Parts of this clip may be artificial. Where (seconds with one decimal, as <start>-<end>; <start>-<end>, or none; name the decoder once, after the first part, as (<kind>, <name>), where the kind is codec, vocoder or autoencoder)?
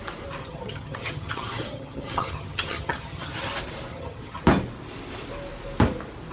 0.4-3.5 (vocoder, HiFi-GAN); 3.9-4.4